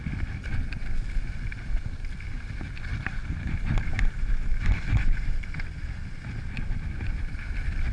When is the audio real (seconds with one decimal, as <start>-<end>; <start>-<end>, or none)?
0.0-7.9